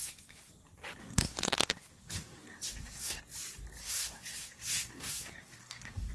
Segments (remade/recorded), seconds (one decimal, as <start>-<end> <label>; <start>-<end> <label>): 0.0-0.5 remade; 0.5-1.0 recorded; 1.0-3.2 remade; 3.2-3.8 recorded; 3.8-6.1 remade